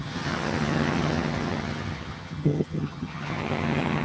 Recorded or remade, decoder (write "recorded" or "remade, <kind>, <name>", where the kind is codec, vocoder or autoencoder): remade, vocoder, HiFi-GAN